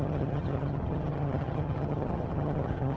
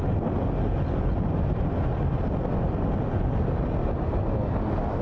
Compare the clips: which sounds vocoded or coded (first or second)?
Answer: first